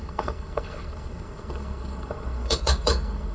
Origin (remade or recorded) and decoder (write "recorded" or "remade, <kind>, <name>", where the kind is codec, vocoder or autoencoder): remade, codec, SNAC